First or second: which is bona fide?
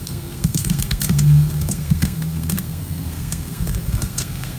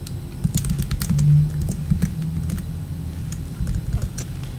second